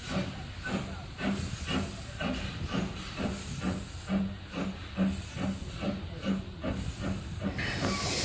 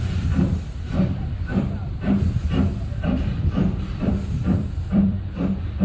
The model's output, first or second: second